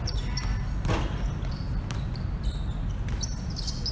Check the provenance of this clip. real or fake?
real